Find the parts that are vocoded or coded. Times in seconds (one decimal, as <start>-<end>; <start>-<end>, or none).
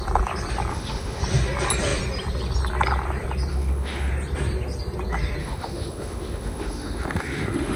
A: 0.7-1.2; 3.5-4.1; 5.4-7.8